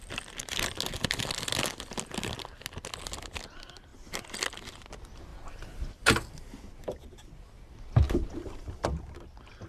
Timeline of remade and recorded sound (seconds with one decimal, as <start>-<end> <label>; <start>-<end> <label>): 0.0-9.7 recorded